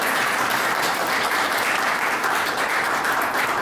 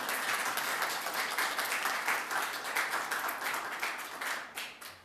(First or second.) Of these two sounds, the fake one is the first